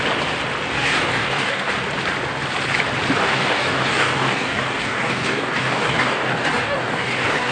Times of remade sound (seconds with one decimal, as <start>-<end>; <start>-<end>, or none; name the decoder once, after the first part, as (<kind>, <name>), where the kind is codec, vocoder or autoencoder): 0.7-1.7 (codec, DAC); 3.2-7.5